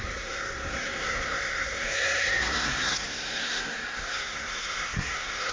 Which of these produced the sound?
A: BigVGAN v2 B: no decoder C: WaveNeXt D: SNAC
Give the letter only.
D